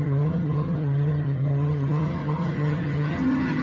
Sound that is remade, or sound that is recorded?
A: remade